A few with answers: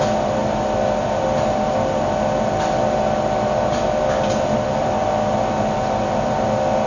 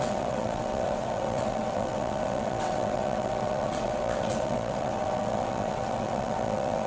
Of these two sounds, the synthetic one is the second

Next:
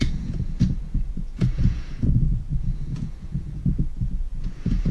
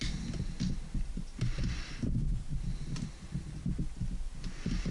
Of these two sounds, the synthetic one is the first